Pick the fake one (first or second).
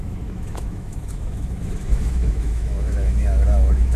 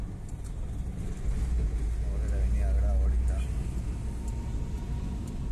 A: first